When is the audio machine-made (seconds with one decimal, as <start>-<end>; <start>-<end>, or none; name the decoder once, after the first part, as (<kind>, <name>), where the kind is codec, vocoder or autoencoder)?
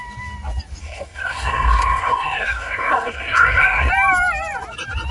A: 0.8-3.9 (codec, SNAC)